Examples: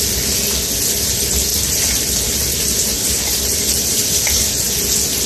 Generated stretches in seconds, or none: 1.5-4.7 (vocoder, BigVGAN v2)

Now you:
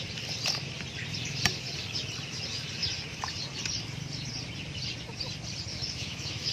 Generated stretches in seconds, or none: 5.7-6.5 (autoencoder, DAC-VAE)